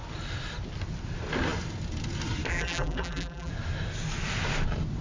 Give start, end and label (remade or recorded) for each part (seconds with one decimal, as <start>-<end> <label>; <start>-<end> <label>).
0.0-2.5 recorded; 2.5-3.5 remade; 3.5-5.0 recorded